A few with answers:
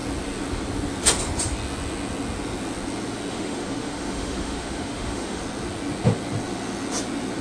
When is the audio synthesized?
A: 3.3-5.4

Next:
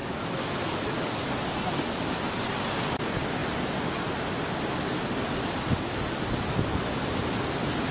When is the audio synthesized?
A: 0.0-2.2

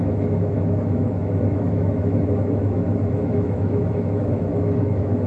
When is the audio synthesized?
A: 0.0-5.3

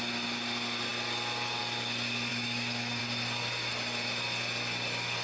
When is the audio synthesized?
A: 2.3-3.0

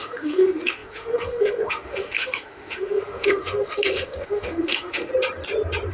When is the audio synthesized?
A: 0.0-5.1

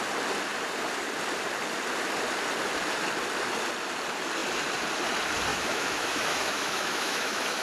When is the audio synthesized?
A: 5.5-7.6